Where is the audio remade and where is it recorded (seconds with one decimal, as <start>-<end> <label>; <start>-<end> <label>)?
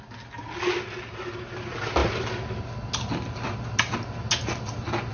0.0-5.1 recorded